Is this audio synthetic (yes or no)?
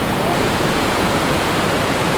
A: yes